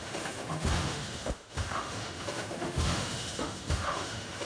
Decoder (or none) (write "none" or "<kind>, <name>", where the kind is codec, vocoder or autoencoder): autoencoder, DAC-VAE